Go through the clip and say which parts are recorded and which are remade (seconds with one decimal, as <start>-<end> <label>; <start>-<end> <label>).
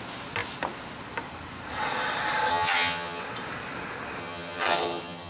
0.0-2.5 recorded; 2.5-3.2 remade; 3.2-4.2 recorded; 4.2-5.3 remade